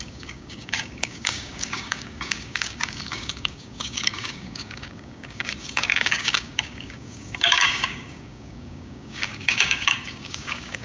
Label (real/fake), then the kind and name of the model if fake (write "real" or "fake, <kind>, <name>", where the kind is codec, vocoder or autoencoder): fake, codec, DAC